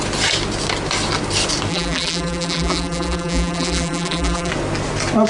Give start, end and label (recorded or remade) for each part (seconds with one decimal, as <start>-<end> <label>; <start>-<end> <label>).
0.0-1.7 recorded; 1.7-4.5 remade; 4.5-5.3 recorded